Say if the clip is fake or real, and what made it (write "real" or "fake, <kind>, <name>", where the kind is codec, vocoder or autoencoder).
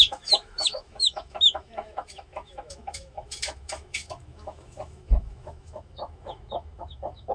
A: fake, autoencoder, DAC-VAE